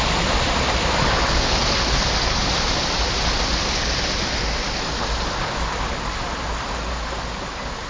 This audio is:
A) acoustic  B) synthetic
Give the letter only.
A